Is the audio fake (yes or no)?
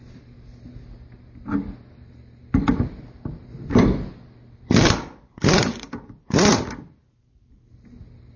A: no